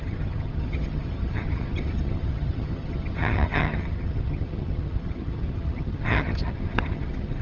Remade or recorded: remade